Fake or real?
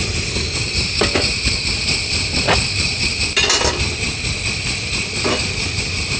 real